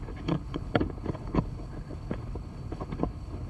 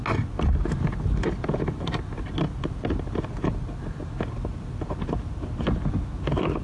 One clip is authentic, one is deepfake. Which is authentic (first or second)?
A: second